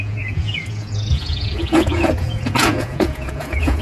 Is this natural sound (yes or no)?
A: no